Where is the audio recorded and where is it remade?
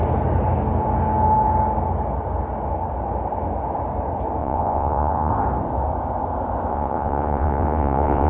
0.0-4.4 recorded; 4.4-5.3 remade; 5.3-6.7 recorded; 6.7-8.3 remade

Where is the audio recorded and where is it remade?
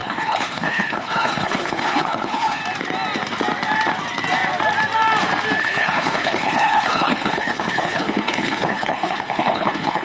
0.0-2.6 remade; 2.6-5.6 recorded; 5.6-10.0 remade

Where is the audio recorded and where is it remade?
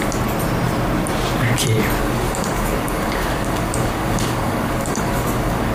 0.0-2.0 recorded; 2.0-5.7 remade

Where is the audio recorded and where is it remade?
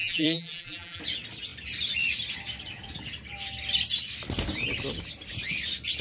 0.0-1.0 remade; 1.0-6.0 recorded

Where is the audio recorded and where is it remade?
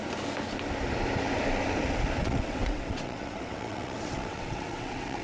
0.0-2.2 recorded; 2.2-5.2 remade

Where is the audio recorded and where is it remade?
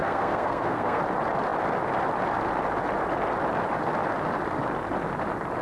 0.0-1.0 remade; 1.0-5.6 recorded